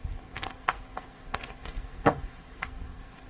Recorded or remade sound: remade